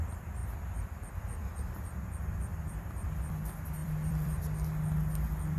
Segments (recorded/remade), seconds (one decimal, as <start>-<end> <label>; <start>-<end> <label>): 0.0-0.4 recorded; 0.4-1.2 remade; 1.2-2.5 recorded; 2.5-3.3 remade; 3.3-3.8 recorded; 3.8-4.4 remade; 4.4-5.6 recorded